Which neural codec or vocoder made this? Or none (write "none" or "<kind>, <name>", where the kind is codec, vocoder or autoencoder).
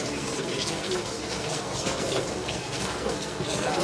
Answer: codec, SNAC